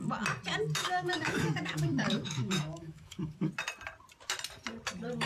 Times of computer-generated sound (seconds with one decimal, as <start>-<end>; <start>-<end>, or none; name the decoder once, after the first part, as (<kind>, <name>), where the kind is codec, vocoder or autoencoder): 0.8-3.5 (autoencoder, DAC-VAE)